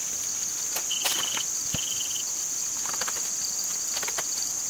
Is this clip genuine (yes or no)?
yes